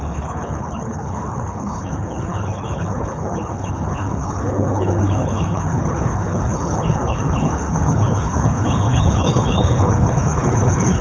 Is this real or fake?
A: fake